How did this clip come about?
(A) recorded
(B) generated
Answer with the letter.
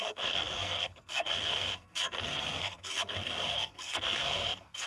B